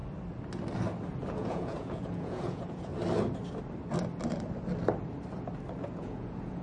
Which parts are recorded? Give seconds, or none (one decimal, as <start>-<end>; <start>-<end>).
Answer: 0.0-1.3; 2.9-5.8